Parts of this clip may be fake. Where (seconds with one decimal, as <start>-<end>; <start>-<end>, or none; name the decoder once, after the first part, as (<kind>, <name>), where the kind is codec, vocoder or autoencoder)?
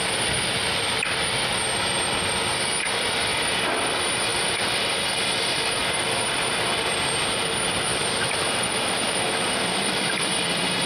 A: 3.3-3.9 (vocoder, BigVGAN v2); 4.3-5.0; 7.9-10.9